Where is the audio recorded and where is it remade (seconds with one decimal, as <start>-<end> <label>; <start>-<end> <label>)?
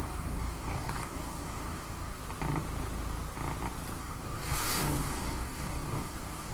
0.0-2.2 remade; 2.2-4.0 recorded; 4.0-6.5 remade